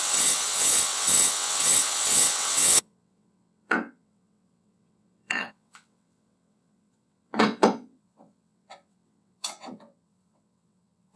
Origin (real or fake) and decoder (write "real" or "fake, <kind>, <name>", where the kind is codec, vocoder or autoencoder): fake, vocoder, WaveNeXt